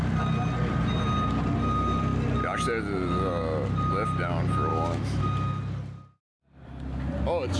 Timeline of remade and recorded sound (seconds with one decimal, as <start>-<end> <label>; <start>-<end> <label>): 0.0-4.7 recorded; 4.7-5.2 remade; 5.2-7.6 recorded